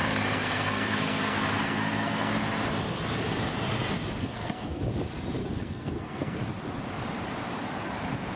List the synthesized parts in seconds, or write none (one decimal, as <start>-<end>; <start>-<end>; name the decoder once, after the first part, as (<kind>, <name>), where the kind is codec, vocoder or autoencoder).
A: 0.0-2.3 (codec, SNAC); 4.2-4.8; 5.4-6.4